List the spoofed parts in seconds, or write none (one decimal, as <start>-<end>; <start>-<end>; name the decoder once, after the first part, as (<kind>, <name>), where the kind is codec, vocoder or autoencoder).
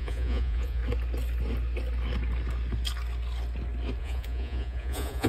0.0-0.8 (vocoder, Vocos); 4.0-5.3